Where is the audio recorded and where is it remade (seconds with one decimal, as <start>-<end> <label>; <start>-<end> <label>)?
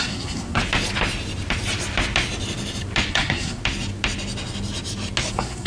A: 0.0-0.6 remade; 0.6-3.1 recorded; 3.1-3.6 remade; 3.6-5.3 recorded; 5.3-5.7 remade